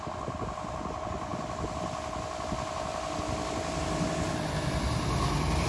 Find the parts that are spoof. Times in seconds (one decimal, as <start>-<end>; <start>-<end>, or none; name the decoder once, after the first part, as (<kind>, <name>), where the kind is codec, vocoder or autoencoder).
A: none